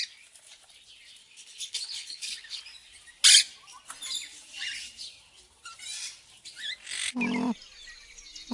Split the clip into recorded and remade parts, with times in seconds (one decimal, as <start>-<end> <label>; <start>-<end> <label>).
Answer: 0.0-1.2 recorded; 1.2-2.6 remade; 2.6-8.5 recorded